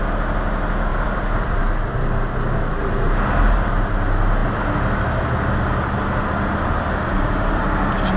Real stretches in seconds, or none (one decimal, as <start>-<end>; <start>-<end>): 0.0-0.9; 1.6-6.2